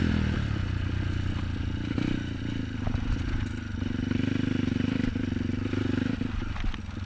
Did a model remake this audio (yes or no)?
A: no